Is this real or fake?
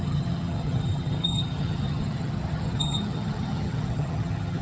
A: fake